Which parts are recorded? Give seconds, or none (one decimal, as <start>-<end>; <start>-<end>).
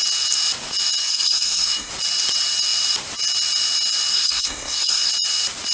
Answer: 0.0-1.0; 1.9-4.1; 5.1-5.7